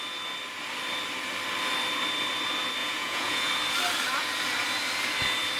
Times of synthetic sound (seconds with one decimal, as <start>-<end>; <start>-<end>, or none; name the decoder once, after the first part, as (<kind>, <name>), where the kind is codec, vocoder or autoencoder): 2.8-3.5 (vocoder, Vocos)